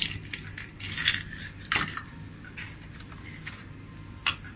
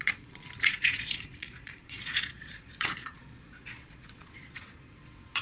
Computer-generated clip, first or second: second